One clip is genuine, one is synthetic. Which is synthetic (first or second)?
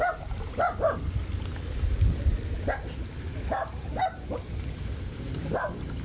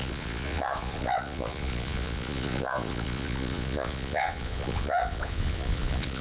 second